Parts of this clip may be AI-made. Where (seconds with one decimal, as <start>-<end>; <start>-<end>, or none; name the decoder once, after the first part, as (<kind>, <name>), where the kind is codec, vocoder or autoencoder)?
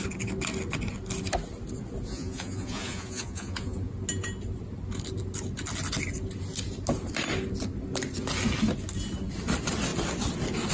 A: 2.1-3.9 (vocoder, Vocos)